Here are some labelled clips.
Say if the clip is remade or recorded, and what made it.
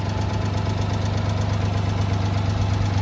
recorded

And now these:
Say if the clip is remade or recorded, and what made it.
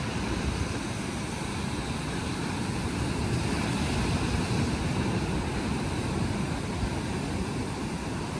recorded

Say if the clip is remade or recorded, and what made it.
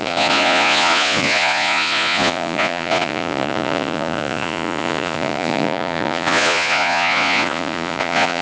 remade, vocoder, Vocos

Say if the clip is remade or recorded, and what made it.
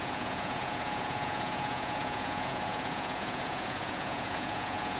remade, vocoder, Vocos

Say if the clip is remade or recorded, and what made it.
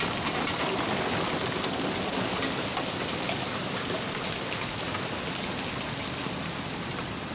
recorded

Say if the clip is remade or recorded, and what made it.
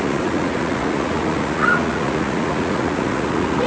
remade, vocoder, Vocos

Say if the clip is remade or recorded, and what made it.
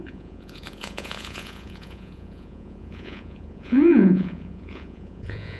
remade, vocoder, Vocos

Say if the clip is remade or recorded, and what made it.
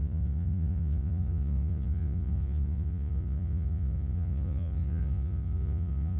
remade, vocoder, Vocos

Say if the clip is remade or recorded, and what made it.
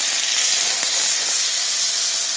recorded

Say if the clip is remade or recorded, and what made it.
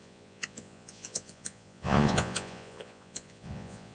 remade, vocoder, Vocos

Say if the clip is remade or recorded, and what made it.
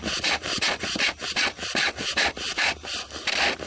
recorded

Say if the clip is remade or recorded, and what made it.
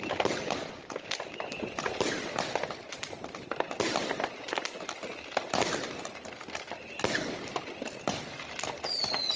recorded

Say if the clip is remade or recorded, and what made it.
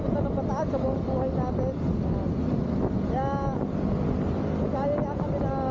recorded